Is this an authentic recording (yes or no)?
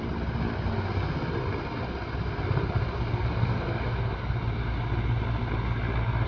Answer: yes